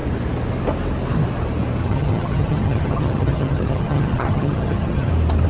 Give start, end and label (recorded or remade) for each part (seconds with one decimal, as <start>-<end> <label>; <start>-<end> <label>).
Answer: 0.0-1.8 recorded; 1.8-5.1 remade; 5.1-5.5 recorded